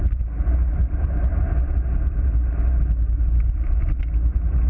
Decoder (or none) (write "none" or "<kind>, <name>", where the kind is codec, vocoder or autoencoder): none